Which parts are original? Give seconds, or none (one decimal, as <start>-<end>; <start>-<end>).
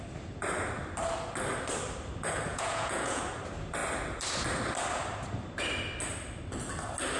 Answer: 0.0-2.5; 3.2-7.2